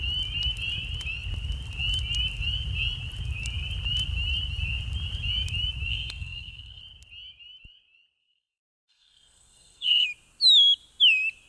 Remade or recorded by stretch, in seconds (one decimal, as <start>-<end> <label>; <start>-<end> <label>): 0.0-5.9 recorded; 5.9-6.8 remade; 6.8-8.2 recorded; 8.2-10.1 remade; 10.1-11.5 recorded